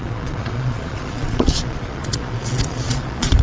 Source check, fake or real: fake